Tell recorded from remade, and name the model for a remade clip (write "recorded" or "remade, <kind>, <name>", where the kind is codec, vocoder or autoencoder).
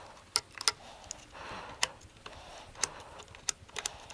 recorded